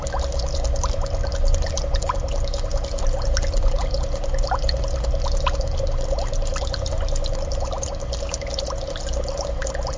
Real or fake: real